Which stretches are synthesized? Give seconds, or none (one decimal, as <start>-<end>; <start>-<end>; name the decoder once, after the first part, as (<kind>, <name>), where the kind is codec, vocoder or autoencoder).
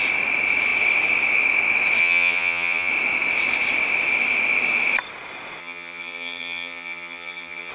2.0-2.9 (vocoder, HiFi-GAN); 5.6-7.7